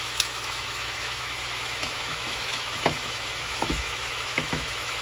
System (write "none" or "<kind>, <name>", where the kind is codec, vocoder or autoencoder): autoencoder, DAC-VAE